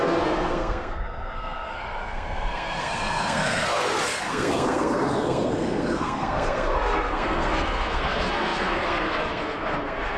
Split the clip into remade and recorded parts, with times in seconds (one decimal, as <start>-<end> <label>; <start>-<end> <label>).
0.0-10.2 remade